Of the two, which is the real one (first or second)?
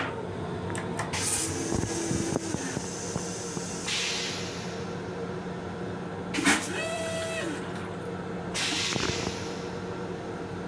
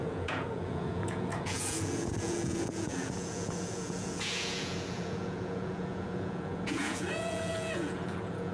first